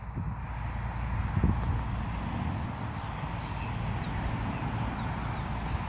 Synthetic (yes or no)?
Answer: no